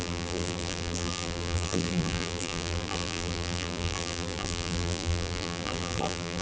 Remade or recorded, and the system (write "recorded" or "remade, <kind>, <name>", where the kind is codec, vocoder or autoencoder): remade, vocoder, BigVGAN v2